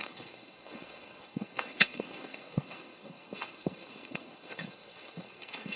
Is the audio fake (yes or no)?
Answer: yes